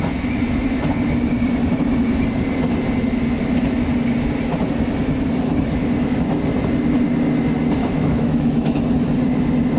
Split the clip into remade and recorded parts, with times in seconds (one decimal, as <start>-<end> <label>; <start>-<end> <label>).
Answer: 0.0-7.8 recorded; 7.8-8.8 remade; 8.8-9.8 recorded

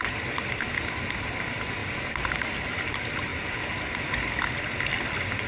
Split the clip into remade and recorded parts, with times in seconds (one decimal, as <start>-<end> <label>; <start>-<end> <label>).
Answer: 0.0-5.5 recorded

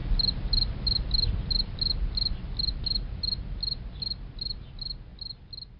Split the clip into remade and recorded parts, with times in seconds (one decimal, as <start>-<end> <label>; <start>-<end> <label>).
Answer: 0.0-5.8 recorded

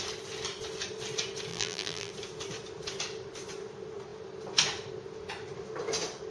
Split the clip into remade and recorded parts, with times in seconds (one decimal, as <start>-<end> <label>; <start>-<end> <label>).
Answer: 0.0-1.5 recorded; 1.5-2.1 remade; 2.1-6.3 recorded